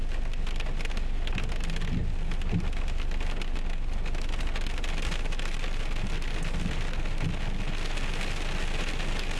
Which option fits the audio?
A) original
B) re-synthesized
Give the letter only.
A